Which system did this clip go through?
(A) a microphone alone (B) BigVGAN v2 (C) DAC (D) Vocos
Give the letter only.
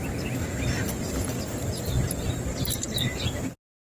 A